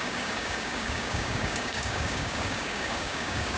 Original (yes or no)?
no